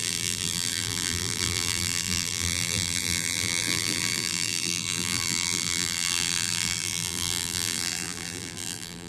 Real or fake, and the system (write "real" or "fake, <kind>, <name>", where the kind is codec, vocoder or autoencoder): fake, vocoder, BigVGAN v2